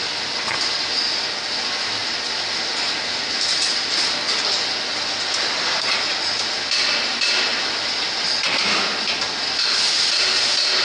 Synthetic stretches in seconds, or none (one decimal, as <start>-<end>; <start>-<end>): none